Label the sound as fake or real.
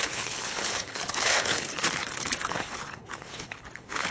fake